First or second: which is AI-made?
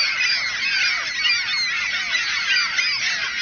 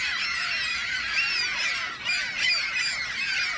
second